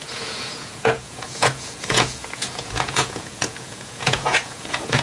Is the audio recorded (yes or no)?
no